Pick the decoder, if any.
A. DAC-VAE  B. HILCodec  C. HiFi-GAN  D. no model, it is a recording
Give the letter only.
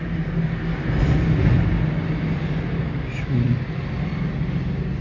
D